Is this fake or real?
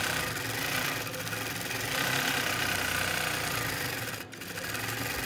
real